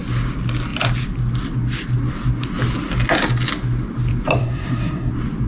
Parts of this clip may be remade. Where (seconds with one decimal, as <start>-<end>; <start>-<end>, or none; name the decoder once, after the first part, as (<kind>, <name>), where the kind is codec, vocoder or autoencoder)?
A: 4.4-5.1 (codec, SNAC)